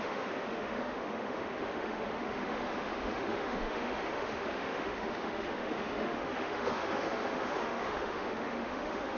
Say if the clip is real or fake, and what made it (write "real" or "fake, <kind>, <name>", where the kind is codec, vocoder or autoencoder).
fake, autoencoder, DAC-VAE